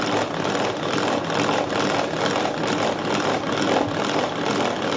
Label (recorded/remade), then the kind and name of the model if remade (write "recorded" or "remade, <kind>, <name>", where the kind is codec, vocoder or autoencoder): recorded